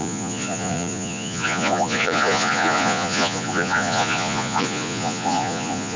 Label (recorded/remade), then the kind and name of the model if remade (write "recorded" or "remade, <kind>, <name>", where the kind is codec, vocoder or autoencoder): remade, vocoder, Vocos